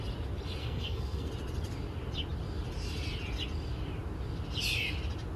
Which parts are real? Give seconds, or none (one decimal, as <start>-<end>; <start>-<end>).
0.0-0.6; 1.3-5.4